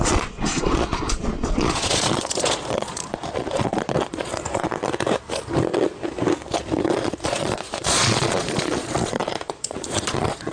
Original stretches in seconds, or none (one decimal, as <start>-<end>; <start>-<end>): 4.3-6.9